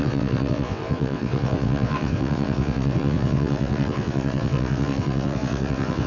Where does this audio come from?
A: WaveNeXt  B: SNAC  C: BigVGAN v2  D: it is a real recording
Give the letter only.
A